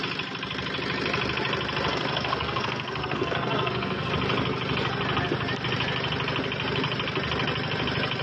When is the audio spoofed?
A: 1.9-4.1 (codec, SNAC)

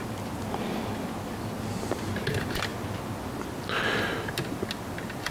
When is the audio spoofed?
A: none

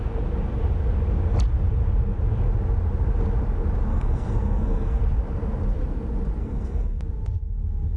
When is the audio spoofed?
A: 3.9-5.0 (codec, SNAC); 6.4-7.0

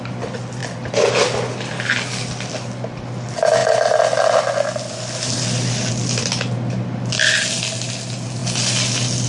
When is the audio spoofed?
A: none

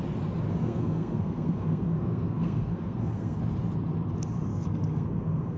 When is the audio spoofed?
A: 0.5-3.4 (codec, SNAC); 4.5-5.6

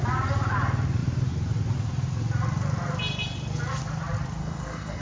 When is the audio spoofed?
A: 4.4-5.0 (codec, SNAC)

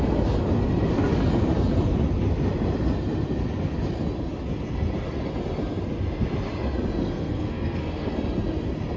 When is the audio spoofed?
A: 7.0-8.1 (codec, SNAC)